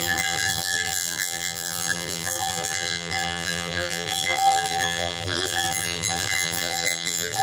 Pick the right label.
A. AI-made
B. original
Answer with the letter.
A